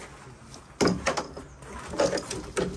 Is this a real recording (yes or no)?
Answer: yes